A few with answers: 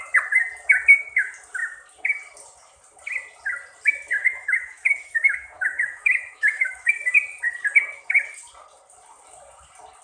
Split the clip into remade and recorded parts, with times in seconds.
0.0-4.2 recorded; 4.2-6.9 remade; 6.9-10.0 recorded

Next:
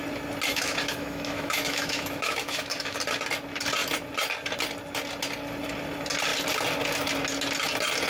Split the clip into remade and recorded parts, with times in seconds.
0.0-0.5 recorded; 0.5-3.0 remade; 3.0-8.1 recorded

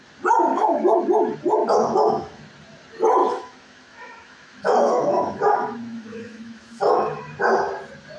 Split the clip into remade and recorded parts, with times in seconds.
0.0-0.5 recorded; 0.5-1.0 remade; 1.0-1.6 recorded; 1.6-2.4 remade; 2.4-3.2 recorded; 3.2-7.2 remade; 7.2-8.2 recorded

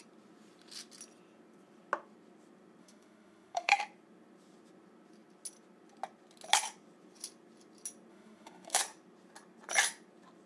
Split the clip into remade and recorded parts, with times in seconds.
0.0-2.8 recorded; 2.8-3.8 remade; 3.8-8.1 recorded; 8.1-8.8 remade; 8.8-10.5 recorded

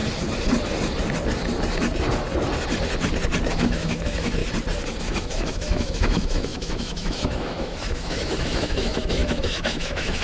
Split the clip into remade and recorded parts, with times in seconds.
0.0-3.5 recorded; 3.5-4.4 remade; 4.4-5.0 recorded; 5.0-10.2 remade

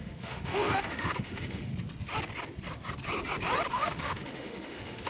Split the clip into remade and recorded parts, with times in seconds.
0.0-1.7 remade; 1.7-3.7 recorded; 3.7-5.1 remade